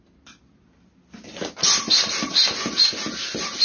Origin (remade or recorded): recorded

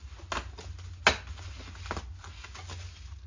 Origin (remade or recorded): recorded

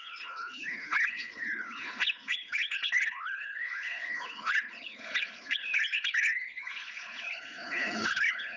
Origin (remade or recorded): remade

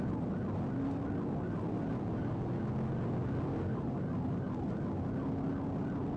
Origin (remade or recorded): recorded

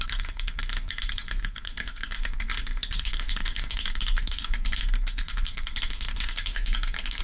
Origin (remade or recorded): remade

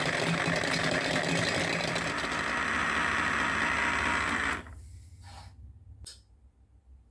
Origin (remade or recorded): recorded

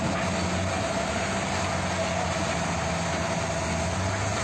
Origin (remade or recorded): recorded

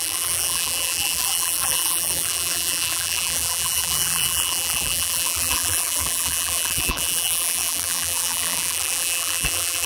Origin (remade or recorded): remade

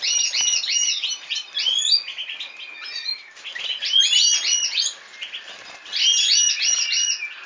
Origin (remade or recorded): recorded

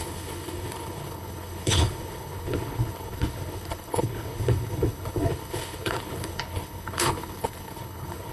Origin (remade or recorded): remade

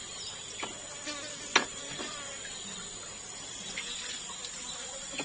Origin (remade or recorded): recorded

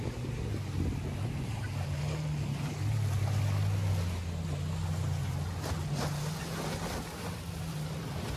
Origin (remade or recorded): recorded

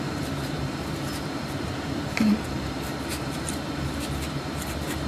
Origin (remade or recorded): remade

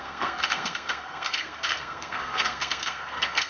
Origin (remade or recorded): remade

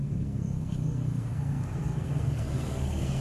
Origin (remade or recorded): remade